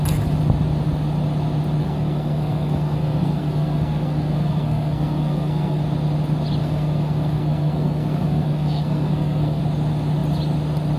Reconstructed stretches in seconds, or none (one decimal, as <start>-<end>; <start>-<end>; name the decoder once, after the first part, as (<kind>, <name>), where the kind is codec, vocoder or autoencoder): 1.8-5.8 (codec, SNAC); 6.6-9.6